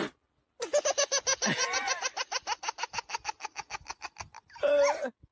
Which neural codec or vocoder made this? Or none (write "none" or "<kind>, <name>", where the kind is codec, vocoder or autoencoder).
none